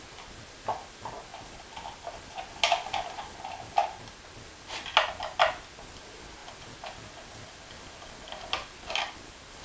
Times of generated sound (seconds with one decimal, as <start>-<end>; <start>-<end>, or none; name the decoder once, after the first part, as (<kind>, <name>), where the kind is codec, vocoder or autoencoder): none